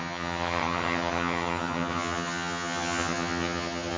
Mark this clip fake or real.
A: fake